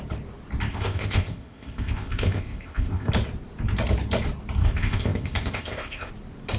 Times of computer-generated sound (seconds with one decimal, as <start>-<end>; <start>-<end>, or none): 0.7-3.1; 4.6-6.1